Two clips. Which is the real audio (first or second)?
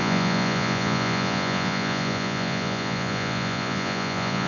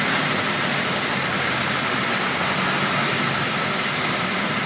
second